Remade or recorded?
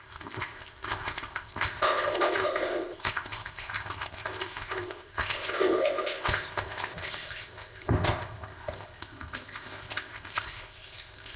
remade